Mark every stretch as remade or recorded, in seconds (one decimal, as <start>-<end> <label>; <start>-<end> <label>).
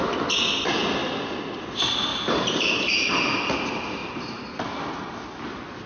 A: 0.0-2.1 recorded; 2.1-3.4 remade; 3.4-4.0 recorded; 4.0-4.9 remade; 4.9-5.9 recorded